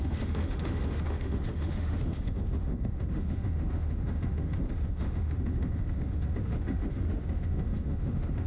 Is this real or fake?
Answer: fake